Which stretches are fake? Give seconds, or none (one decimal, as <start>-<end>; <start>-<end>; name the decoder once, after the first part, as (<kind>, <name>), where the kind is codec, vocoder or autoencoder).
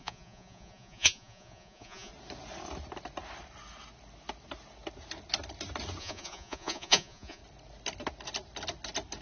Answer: 0.0-2.1 (vocoder, Vocos); 6.0-7.4